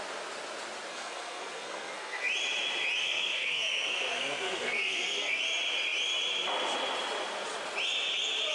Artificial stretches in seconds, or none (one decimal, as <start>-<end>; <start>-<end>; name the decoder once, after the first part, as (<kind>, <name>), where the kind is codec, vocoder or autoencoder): 0.9-2.3 (codec, SNAC); 3.0-5.4